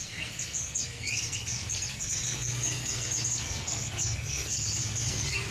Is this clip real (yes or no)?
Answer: no